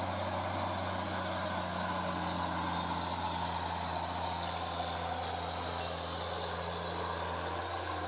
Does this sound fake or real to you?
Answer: real